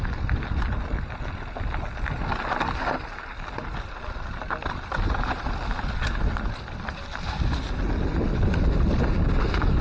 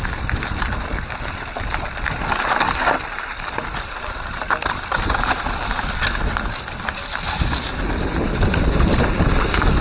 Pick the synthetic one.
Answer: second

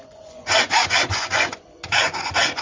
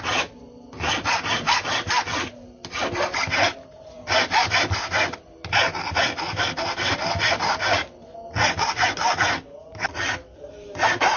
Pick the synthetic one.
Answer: first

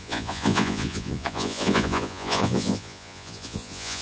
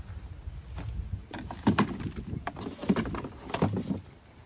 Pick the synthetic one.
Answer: first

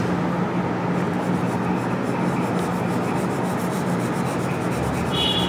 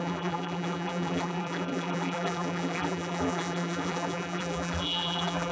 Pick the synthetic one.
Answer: second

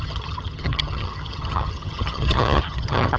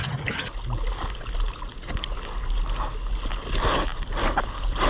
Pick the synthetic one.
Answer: first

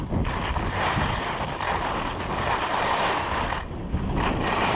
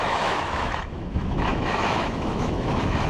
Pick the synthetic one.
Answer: second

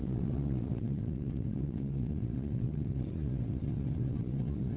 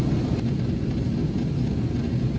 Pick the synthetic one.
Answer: first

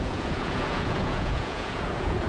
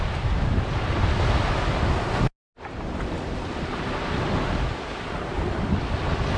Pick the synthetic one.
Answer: first